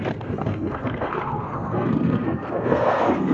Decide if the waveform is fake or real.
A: fake